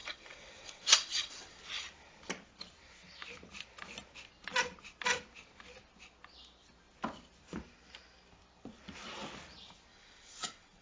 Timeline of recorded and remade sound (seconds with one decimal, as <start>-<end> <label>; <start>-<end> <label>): 0.0-1.6 remade; 1.6-9.9 recorded; 9.9-10.8 remade

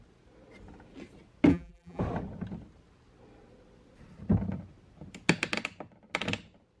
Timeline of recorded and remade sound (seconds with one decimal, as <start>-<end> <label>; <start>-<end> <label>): 0.0-1.5 recorded; 1.5-2.0 remade; 2.0-6.8 recorded

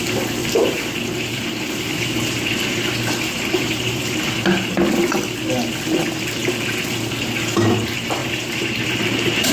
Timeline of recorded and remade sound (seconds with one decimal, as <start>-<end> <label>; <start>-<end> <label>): 0.0-0.4 recorded; 0.4-4.2 remade; 4.2-8.2 recorded; 8.2-9.5 remade

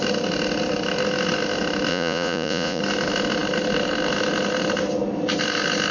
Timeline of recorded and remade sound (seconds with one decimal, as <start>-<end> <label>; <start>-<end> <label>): 0.0-1.9 recorded; 1.9-2.8 remade; 2.8-5.9 recorded

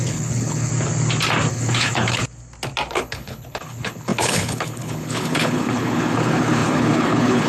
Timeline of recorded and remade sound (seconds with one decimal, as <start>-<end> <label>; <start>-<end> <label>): 0.0-0.7 remade; 0.7-1.5 recorded; 1.5-2.2 remade; 2.2-2.9 recorded; 2.9-7.5 remade

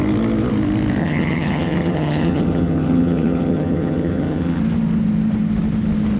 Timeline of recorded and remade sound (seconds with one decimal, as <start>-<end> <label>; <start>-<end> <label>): 0.0-1.0 recorded; 1.0-4.6 remade; 4.6-6.2 recorded